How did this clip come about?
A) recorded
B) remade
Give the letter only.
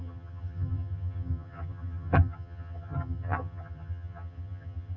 B